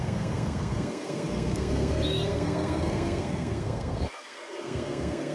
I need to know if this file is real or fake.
fake